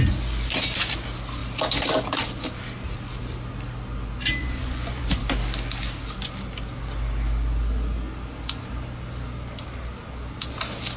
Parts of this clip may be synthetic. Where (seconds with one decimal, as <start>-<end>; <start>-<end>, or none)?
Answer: 4.4-5.2